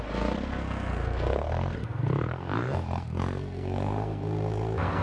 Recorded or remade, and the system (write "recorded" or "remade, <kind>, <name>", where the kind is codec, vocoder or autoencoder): remade, codec, SNAC